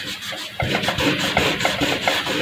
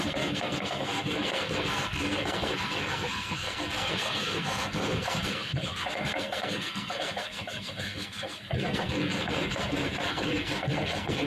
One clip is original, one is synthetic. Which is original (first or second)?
first